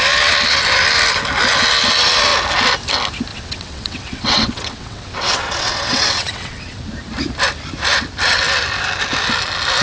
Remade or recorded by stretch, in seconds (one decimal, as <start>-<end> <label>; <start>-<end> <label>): 0.0-3.3 recorded; 3.3-6.9 remade; 6.9-9.8 recorded